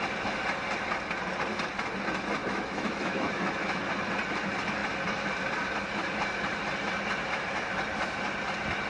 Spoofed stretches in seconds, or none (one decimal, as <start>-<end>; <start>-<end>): 2.4-3.8